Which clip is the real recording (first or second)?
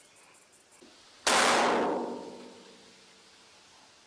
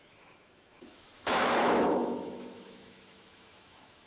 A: first